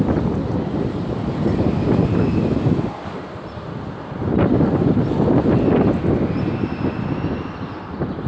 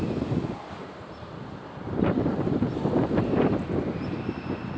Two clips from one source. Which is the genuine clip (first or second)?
first